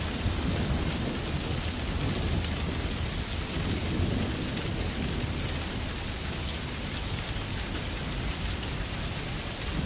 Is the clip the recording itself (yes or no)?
yes